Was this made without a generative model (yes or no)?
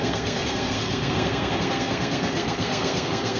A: no